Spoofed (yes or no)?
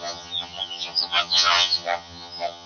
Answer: yes